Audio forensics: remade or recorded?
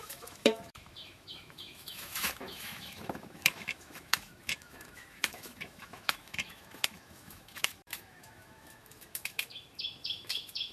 remade